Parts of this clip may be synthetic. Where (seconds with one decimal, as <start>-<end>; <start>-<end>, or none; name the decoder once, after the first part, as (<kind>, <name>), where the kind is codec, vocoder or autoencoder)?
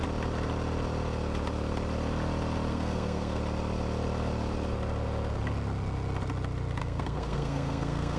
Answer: 2.7-3.4 (codec, SNAC); 6.8-8.2